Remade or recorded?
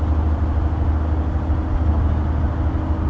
recorded